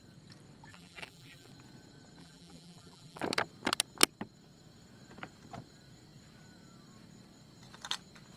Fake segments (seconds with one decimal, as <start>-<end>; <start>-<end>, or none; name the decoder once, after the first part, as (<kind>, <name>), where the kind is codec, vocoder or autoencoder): 0.7-1.5 (vocoder, BigVGAN v2); 2.2-3.2